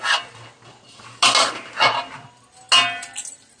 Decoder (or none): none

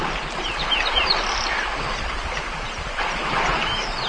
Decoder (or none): none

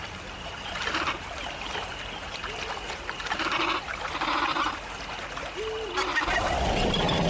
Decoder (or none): none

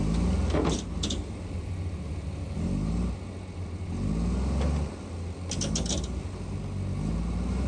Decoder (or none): none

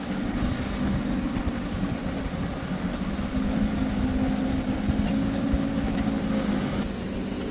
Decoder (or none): none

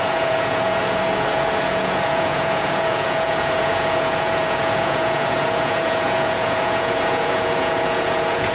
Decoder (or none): vocoder, Vocos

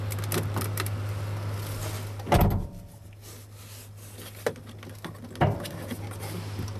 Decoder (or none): none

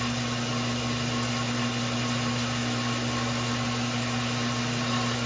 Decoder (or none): none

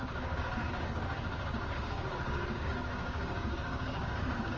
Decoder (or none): codec, DAC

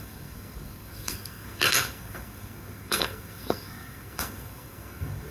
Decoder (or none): codec, SNAC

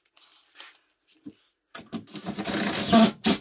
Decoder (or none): none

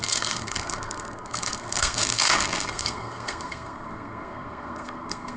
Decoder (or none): codec, SNAC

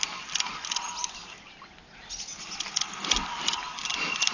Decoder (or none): none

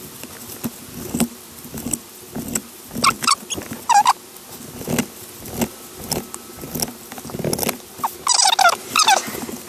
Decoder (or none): none